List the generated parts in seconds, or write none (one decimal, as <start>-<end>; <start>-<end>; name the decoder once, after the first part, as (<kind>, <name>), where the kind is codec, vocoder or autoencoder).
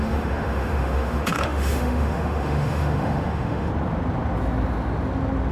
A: 0.0-3.7 (autoencoder, DAC-VAE)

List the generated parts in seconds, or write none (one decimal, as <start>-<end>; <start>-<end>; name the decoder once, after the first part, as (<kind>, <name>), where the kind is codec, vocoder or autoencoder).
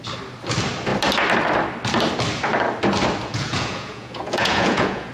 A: 3.3-5.1 (vocoder, Vocos)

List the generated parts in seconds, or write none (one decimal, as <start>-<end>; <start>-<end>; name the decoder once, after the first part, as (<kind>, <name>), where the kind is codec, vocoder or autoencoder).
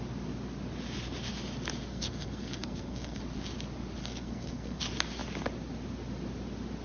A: 1.9-3.2 (codec, SNAC); 4.0-4.8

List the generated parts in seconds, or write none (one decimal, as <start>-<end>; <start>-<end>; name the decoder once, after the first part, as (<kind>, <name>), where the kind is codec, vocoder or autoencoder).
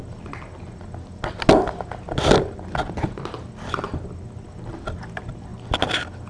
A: none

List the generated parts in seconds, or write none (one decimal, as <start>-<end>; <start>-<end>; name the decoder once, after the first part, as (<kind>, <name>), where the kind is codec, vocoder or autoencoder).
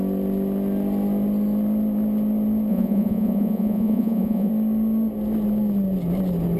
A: 2.7-4.5 (vocoder, Vocos)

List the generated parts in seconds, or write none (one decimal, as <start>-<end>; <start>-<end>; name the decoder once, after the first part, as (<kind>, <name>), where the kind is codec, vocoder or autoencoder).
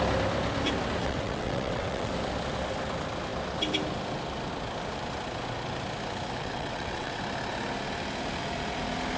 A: 1.0-2.1 (vocoder, WaveNeXt); 6.4-7.2